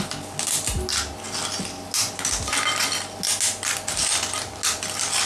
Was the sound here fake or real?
real